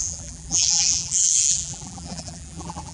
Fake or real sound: fake